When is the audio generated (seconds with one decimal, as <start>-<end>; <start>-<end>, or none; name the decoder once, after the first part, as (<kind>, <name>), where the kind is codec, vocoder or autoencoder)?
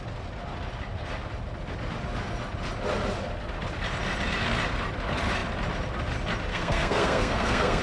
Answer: 6.5-7.8 (codec, SNAC)